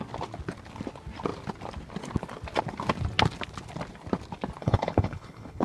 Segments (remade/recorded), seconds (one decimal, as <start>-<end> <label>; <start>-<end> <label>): 0.0-4.6 recorded; 4.6-5.6 remade

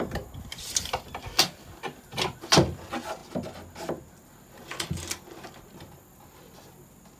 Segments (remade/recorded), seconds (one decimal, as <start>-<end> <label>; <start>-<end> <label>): 0.0-7.2 recorded

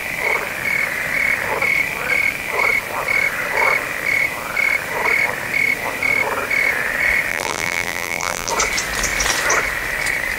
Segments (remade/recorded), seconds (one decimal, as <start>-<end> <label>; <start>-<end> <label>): 0.0-7.3 recorded; 7.3-8.5 remade; 8.5-10.4 recorded

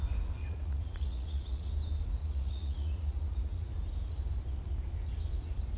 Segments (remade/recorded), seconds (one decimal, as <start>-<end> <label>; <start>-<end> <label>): 0.0-0.4 recorded; 0.4-1.7 remade; 1.7-2.2 recorded; 2.2-3.7 remade; 3.7-5.8 recorded

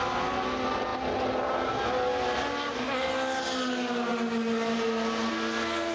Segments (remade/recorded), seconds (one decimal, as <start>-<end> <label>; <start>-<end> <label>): 0.0-5.9 recorded